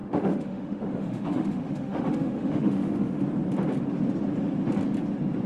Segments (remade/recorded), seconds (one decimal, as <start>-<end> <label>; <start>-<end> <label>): 0.0-3.2 remade; 3.2-5.5 recorded